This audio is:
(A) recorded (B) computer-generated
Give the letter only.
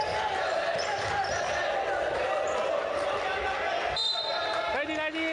A